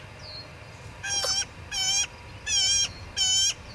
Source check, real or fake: real